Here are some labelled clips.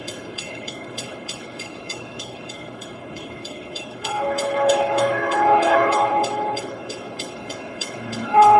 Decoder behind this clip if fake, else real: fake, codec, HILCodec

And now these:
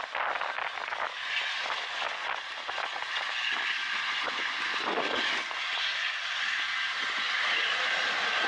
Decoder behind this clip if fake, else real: real